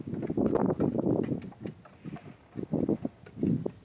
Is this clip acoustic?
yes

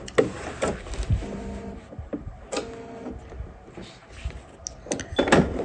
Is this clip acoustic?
yes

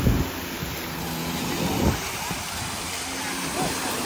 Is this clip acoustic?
yes